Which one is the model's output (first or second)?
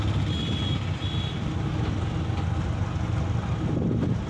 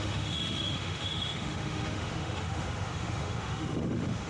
second